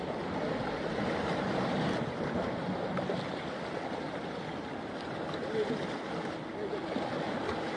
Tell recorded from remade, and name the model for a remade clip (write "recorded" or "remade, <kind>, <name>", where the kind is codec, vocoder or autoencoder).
recorded